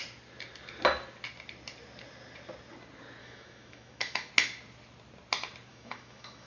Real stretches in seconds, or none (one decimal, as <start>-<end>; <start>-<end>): 0.0-3.2; 4.3-5.7